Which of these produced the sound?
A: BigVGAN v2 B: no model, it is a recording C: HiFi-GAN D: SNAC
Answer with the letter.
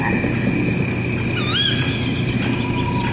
B